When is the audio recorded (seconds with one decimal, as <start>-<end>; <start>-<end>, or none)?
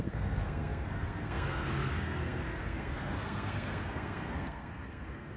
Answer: none